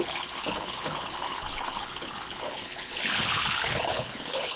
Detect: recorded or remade remade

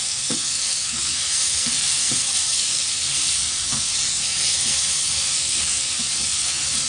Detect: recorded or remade remade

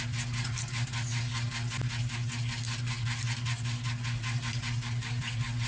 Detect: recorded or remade recorded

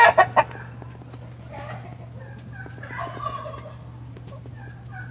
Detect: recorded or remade recorded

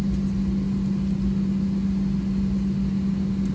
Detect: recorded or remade recorded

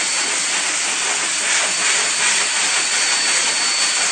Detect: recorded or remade recorded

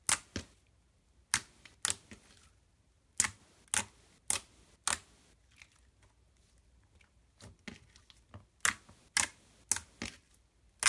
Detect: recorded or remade recorded